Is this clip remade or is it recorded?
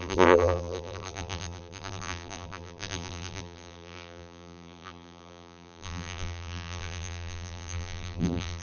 remade